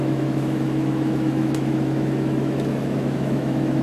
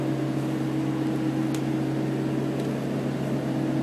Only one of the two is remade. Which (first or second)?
first